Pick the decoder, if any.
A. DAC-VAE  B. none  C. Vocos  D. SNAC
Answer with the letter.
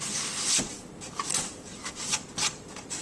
B